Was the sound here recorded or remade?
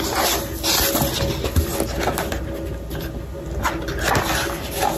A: recorded